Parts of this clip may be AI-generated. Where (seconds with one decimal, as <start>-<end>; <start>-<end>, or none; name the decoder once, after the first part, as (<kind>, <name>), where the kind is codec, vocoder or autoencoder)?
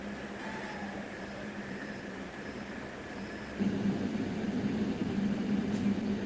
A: 0.8-4.6 (vocoder, BigVGAN v2)